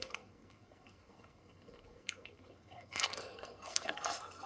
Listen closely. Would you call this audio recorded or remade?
remade